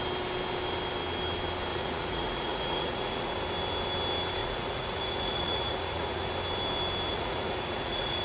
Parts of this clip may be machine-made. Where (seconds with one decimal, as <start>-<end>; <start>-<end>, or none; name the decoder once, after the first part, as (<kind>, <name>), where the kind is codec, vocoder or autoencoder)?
1.7-3.3 (vocoder, Vocos); 4.4-6.3; 7.1-8.2